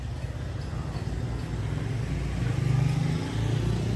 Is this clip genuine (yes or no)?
yes